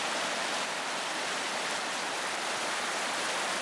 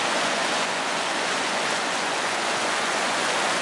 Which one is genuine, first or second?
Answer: first